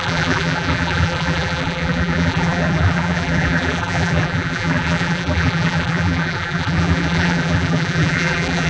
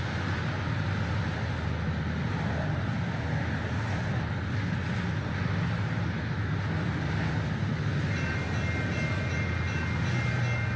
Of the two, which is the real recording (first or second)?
second